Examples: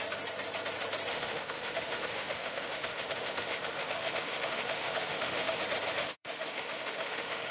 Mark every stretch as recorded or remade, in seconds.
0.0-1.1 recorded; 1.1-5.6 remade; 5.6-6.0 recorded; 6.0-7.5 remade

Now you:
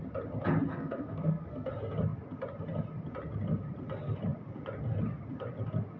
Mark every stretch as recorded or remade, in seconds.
0.0-0.7 recorded; 0.7-1.7 remade; 1.7-6.0 recorded